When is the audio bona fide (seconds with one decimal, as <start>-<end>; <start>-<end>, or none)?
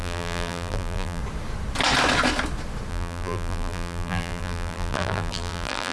1.2-2.9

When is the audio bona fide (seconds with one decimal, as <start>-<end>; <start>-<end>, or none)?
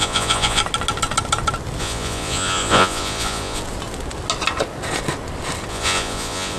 0.6-1.8; 3.6-5.7